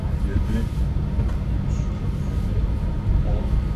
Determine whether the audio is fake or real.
real